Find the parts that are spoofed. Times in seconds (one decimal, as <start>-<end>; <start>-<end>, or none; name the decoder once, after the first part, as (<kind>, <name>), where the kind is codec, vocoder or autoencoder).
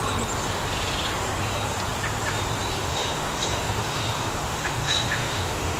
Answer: 2.9-5.8 (autoencoder, DAC-VAE)